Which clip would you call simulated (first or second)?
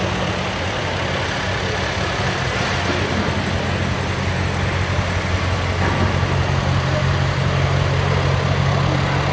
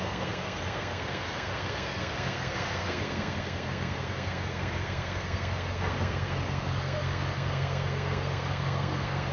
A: second